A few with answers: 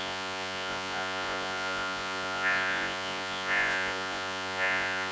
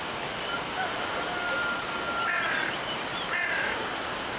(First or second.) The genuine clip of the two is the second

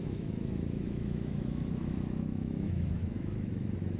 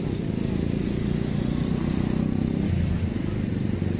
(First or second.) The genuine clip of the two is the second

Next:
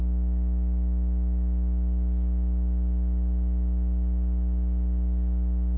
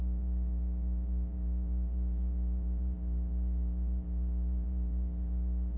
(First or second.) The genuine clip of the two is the first